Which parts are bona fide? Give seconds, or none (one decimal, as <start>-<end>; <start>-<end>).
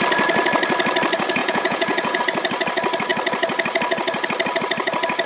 0.0-1.4; 2.2-5.3